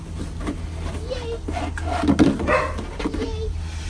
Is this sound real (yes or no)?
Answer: yes